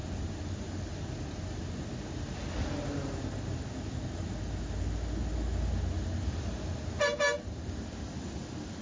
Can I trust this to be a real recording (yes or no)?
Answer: yes